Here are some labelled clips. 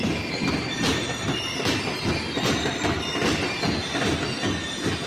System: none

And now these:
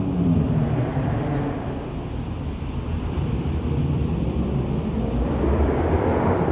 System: vocoder, BigVGAN v2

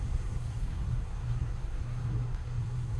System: codec, SNAC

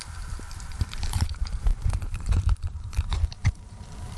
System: vocoder, BigVGAN v2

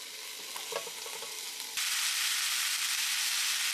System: none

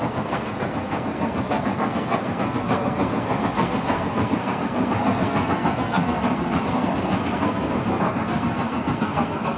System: codec, SNAC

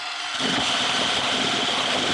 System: none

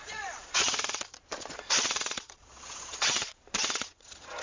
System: vocoder, Vocos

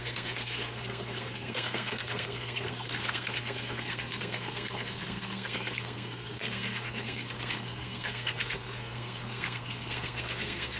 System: codec, SNAC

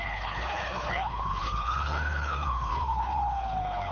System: codec, HILCodec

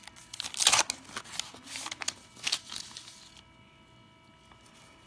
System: none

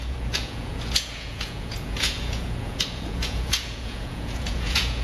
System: vocoder, Vocos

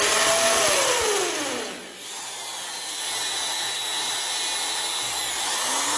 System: none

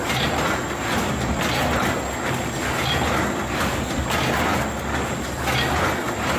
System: none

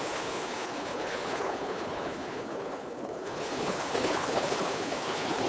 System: codec, HILCodec